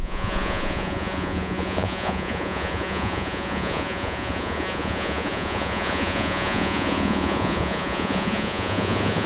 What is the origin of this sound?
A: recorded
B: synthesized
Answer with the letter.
B